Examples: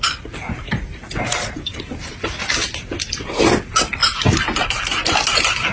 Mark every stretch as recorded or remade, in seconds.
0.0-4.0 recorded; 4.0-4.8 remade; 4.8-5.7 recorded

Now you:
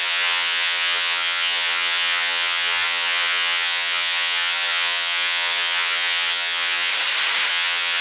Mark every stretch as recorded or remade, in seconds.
0.0-6.9 remade; 6.9-7.5 recorded; 7.5-8.0 remade

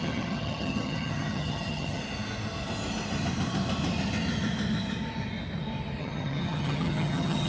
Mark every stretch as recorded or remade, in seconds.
0.0-2.0 remade; 2.0-6.0 recorded; 6.0-7.5 remade

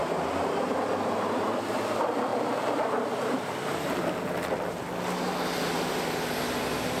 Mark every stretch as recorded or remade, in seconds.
0.0-2.3 remade; 2.3-6.5 recorded; 6.5-7.0 remade

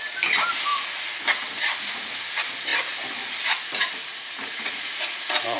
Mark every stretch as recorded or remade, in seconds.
0.0-4.1 recorded; 4.1-5.6 remade

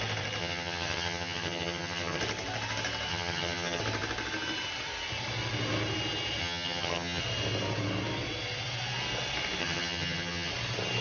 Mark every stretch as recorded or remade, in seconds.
0.0-0.4 recorded; 0.4-2.2 remade; 2.2-3.1 recorded; 3.1-3.8 remade; 3.8-6.4 recorded; 6.4-7.2 remade; 7.2-9.6 recorded; 9.6-10.5 remade; 10.5-11.0 recorded

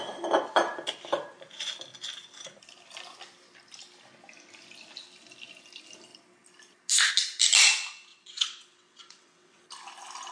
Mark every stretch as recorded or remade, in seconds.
0.0-8.1 recorded; 8.1-9.6 remade; 9.6-10.3 recorded

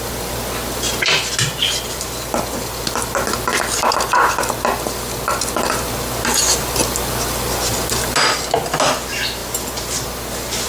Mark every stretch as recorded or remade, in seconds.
0.0-10.7 recorded